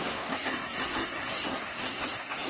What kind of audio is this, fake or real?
fake